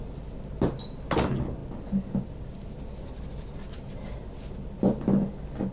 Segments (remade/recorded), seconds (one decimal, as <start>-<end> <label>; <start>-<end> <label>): 0.0-5.7 recorded

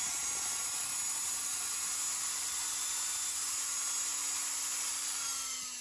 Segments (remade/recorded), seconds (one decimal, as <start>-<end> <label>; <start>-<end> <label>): 0.0-5.8 recorded

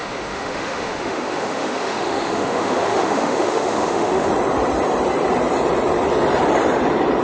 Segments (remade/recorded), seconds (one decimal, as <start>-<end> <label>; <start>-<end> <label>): 0.0-4.3 remade; 4.3-7.2 recorded